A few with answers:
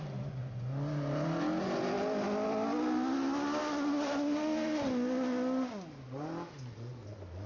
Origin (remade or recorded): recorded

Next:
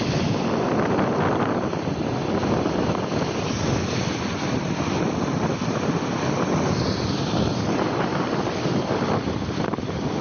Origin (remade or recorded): remade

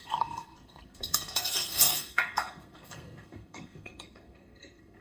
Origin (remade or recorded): remade